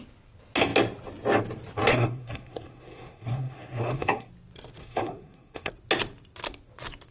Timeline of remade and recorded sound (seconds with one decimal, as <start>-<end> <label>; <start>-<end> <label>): 0.0-1.9 recorded; 1.9-4.3 remade; 4.3-4.8 recorded; 4.8-5.7 remade; 5.7-7.1 recorded